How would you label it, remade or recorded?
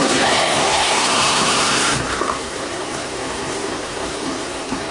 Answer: remade